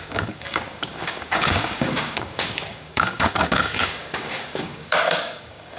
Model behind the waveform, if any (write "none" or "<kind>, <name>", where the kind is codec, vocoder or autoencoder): codec, DAC